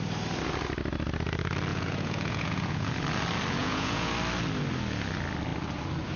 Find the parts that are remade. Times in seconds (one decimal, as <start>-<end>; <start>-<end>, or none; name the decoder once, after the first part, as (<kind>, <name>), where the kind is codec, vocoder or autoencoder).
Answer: 1.7-2.9 (vocoder, Vocos); 3.6-4.1